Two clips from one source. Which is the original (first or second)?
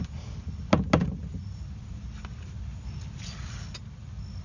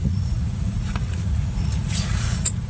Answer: first